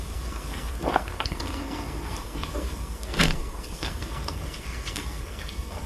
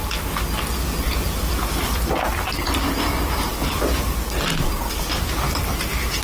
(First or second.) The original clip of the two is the second